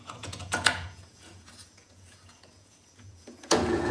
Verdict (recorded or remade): remade